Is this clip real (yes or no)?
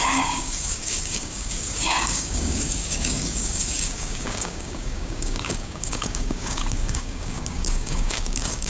no